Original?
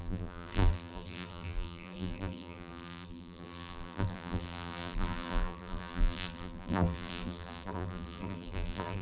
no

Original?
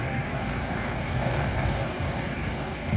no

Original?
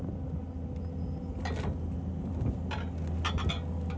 yes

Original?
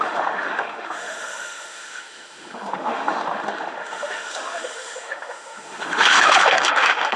no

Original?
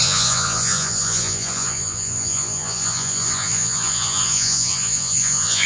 no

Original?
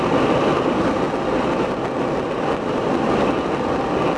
yes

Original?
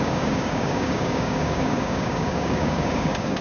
no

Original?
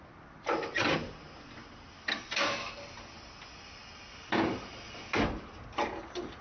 yes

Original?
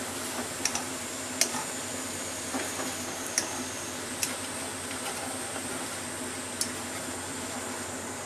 yes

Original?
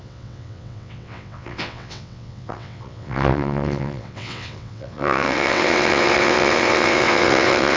no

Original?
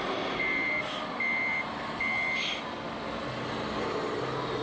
yes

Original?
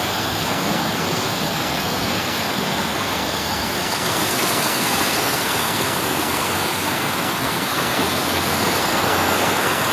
no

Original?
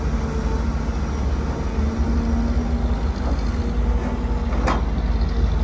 yes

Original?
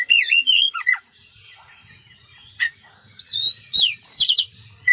no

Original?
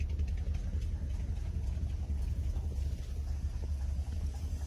yes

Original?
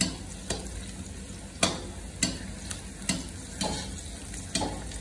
yes